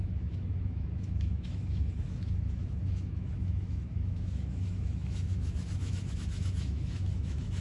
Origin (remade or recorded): remade